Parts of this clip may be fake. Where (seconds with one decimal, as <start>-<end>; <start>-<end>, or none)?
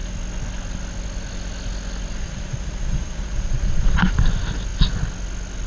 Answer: 2.2-4.1